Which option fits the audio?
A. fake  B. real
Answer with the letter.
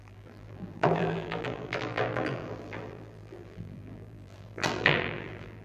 A